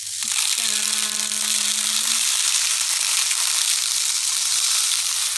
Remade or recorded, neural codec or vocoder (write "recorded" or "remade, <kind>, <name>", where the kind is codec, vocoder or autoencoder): recorded